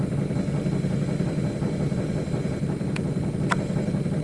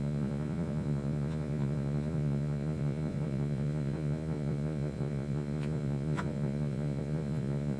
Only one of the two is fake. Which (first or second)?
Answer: second